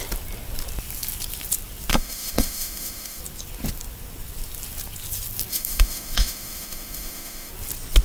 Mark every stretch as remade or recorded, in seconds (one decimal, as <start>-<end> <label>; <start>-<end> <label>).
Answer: 0.0-1.9 recorded; 1.9-3.2 remade; 3.2-5.5 recorded; 5.5-7.5 remade; 7.5-8.0 recorded